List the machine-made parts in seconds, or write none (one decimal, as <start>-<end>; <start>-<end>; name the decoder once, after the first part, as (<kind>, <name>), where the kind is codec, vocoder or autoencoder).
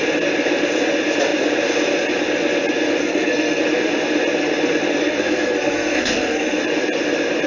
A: 3.0-3.6 (codec, SNAC); 5.0-6.6